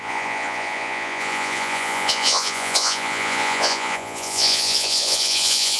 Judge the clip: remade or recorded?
remade